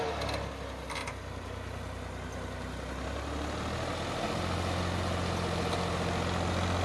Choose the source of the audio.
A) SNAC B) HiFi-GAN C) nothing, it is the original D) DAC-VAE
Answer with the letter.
C